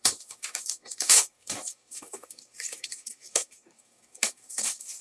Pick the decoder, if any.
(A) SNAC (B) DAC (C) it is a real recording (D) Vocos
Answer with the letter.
B